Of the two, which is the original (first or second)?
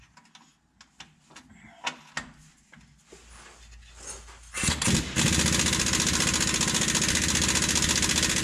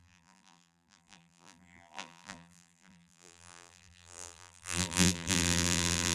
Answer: first